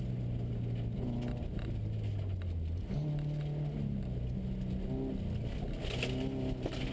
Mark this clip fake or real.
real